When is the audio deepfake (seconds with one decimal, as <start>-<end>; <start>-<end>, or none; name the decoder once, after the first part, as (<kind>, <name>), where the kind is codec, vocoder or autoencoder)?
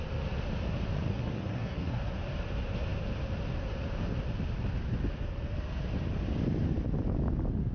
1.1-2.1 (codec, SNAC)